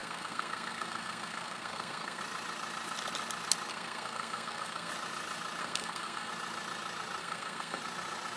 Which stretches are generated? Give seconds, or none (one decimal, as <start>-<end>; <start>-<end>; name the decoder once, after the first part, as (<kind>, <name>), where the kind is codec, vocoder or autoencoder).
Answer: 0.0-2.2 (codec, SNAC); 3.7-4.9; 5.6-6.3; 7.2-7.8